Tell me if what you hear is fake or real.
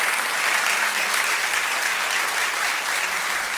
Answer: real